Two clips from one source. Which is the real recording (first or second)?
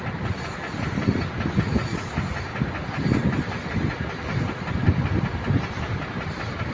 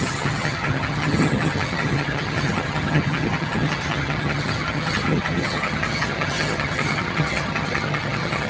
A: first